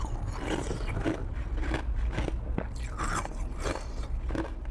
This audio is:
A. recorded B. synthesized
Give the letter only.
A